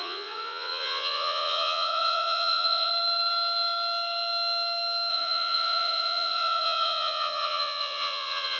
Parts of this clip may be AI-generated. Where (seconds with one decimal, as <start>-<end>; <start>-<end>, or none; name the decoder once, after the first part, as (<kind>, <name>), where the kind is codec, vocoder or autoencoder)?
0.0-2.9 (vocoder, Vocos); 5.1-8.6